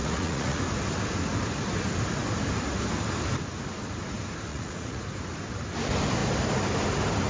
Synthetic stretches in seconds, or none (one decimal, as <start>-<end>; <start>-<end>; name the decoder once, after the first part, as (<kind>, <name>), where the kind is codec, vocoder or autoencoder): 0.0-0.6 (vocoder, Vocos); 4.5-5.0